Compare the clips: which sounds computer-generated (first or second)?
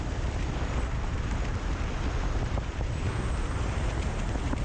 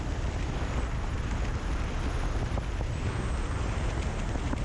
first